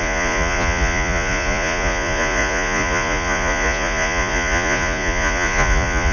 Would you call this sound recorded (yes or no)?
no